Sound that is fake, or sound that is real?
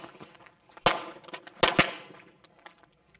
real